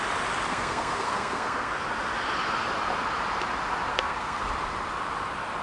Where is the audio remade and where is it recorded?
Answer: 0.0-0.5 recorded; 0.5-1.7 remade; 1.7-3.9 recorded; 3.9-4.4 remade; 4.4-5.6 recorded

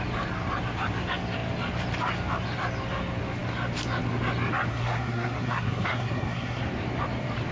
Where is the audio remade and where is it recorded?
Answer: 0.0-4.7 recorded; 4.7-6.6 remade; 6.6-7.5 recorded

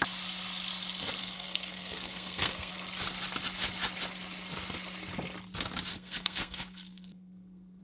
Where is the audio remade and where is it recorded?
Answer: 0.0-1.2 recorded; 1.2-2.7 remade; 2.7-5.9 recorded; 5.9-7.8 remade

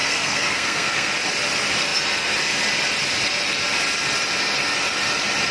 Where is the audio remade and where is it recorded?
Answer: 0.0-1.1 remade; 1.1-5.5 recorded

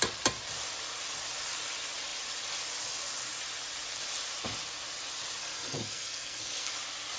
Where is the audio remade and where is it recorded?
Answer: 0.0-5.4 recorded; 5.4-6.7 remade; 6.7-7.2 recorded